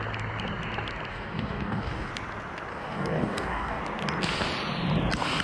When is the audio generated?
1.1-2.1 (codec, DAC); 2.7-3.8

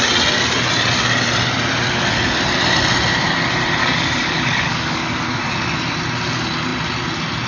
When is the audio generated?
3.8-5.4 (codec, DAC)

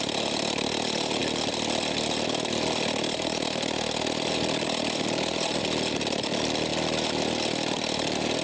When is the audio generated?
none

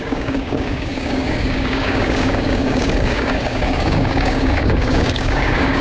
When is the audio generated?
0.0-5.8 (codec, DAC)

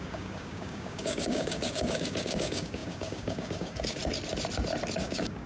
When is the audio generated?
0.0-4.0 (codec, DAC); 5.0-5.5